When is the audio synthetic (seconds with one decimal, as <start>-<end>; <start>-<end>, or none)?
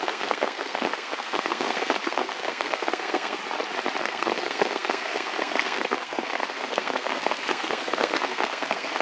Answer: 0.0-3.4; 4.0-9.0